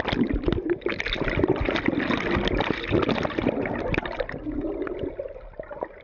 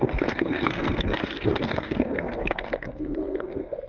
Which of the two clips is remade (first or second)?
second